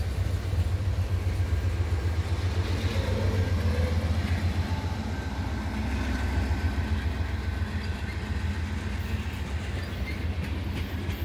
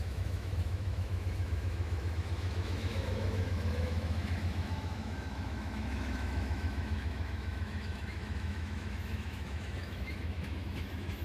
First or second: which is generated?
second